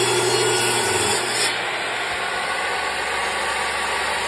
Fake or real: real